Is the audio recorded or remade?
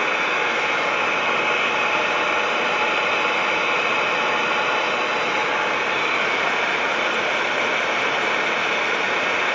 recorded